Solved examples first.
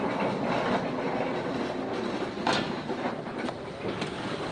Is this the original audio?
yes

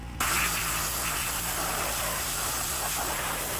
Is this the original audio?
yes